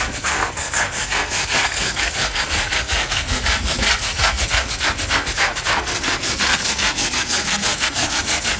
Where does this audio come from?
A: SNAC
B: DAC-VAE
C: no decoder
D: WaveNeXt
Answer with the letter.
A